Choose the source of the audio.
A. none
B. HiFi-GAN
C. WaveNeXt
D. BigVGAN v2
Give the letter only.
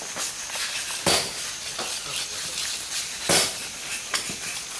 A